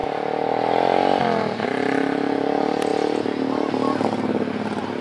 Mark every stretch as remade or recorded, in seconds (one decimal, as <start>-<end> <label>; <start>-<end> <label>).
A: 0.0-5.0 recorded